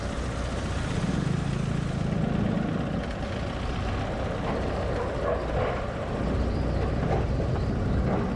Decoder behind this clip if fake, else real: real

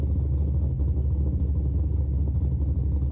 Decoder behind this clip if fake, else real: real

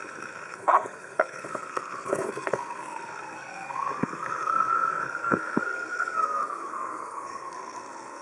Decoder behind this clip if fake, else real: fake, codec, SNAC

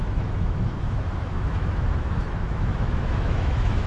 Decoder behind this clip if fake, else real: fake, autoencoder, DAC-VAE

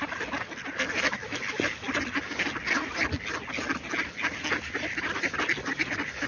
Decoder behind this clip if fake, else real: real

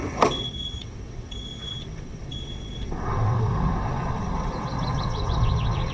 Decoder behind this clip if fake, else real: fake, vocoder, WaveNeXt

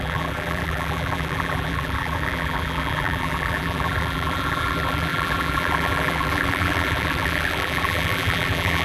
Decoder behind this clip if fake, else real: fake, vocoder, BigVGAN v2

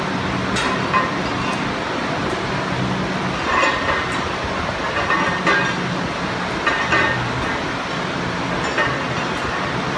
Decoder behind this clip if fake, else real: real